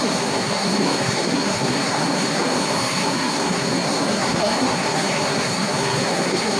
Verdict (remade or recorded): remade